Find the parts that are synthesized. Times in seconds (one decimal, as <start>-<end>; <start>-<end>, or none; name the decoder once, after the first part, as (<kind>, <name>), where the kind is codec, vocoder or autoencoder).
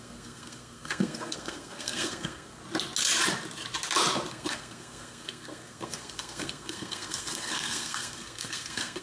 0.0-2.6 (codec, SNAC); 4.3-9.0